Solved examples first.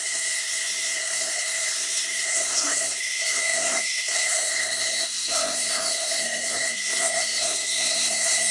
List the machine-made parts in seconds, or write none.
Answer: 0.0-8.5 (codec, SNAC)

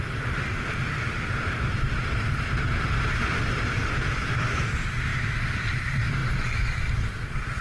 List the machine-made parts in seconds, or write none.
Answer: none

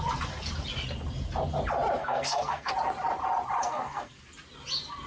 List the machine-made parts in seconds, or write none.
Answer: 2.0-2.7 (codec, SNAC); 3.6-4.2

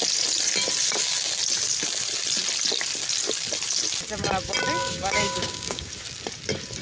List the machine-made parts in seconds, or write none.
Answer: 4.8-5.9 (codec, DAC)

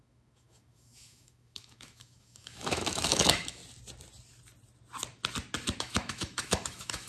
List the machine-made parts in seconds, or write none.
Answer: 0.0-3.6 (autoencoder, DAC-VAE); 5.8-7.1

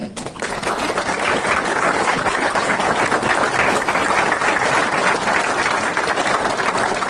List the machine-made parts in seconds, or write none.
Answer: 0.0-0.7 (codec, HILCodec); 1.7-2.9

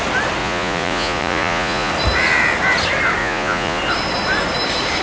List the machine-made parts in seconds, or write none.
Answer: 0.4-1.9 (vocoder, Vocos); 3.2-3.8